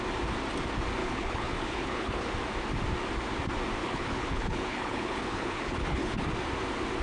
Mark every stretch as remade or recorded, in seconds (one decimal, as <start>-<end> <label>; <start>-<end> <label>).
0.0-1.0 recorded; 1.0-2.3 remade; 2.3-3.8 recorded; 3.8-6.3 remade; 6.3-7.0 recorded